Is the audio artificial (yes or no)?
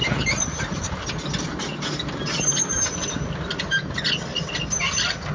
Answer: no